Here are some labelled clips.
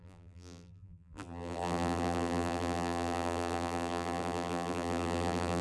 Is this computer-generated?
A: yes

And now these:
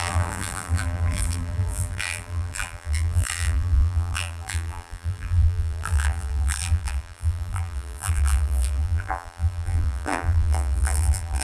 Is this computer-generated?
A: yes